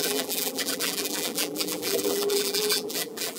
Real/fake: fake